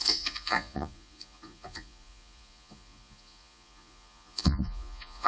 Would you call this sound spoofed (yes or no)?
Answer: yes